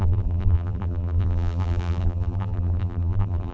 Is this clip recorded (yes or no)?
no